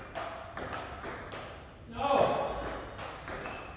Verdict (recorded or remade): recorded